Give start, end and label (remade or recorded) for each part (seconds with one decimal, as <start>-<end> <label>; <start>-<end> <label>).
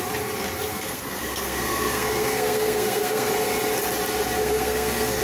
0.0-0.7 recorded; 0.7-3.3 remade; 3.3-4.4 recorded; 4.4-5.2 remade